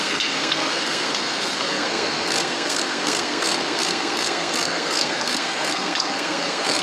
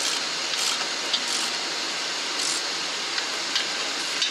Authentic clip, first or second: second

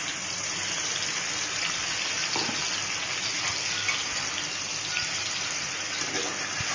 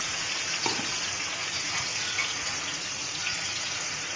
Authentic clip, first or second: first